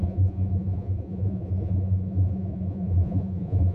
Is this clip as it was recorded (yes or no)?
no